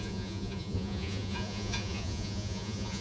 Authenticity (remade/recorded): remade